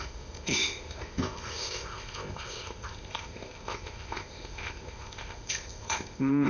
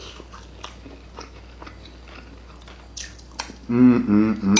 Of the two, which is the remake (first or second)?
first